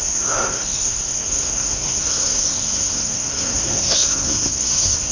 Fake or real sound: fake